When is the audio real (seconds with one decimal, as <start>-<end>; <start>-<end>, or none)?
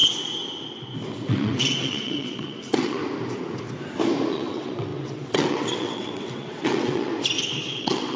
0.0-1.3; 3.0-4.3; 7.1-7.7